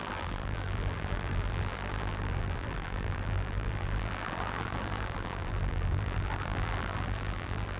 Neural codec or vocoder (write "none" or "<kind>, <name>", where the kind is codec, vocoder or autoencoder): vocoder, BigVGAN v2